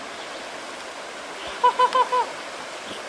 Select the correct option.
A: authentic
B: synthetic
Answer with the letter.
A